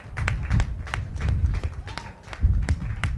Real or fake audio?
fake